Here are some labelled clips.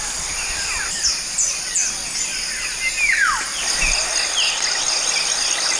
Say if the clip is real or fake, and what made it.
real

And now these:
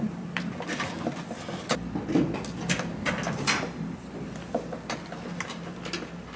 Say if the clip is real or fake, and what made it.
real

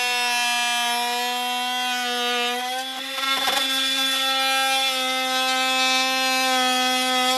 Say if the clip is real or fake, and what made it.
real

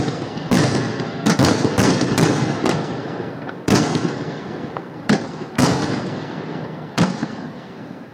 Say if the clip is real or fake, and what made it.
fake, codec, SNAC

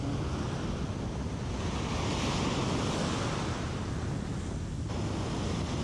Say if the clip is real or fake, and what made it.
real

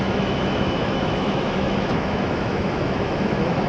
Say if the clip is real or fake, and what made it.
fake, autoencoder, DAC-VAE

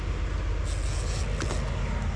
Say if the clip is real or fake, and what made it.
real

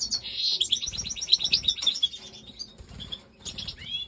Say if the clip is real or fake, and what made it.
real